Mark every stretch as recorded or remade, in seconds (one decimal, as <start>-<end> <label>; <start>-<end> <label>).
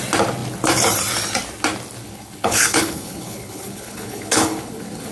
0.0-2.0 recorded; 2.0-5.1 remade